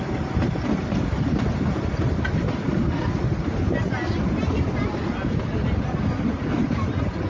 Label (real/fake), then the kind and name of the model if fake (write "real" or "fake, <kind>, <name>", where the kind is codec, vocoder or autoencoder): real